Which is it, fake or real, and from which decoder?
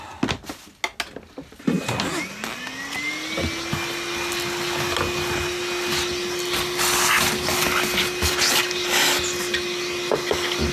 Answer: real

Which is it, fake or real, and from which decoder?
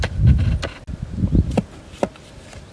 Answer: real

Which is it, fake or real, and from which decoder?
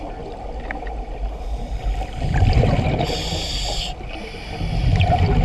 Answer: real